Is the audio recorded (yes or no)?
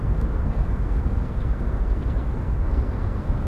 no